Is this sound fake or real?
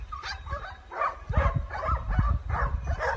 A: real